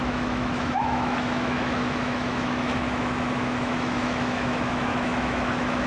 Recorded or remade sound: remade